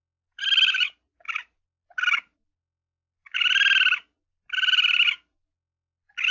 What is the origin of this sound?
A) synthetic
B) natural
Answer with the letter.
B